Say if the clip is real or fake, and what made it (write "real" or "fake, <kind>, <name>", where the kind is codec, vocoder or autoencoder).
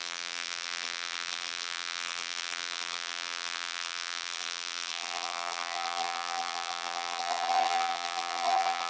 fake, vocoder, BigVGAN v2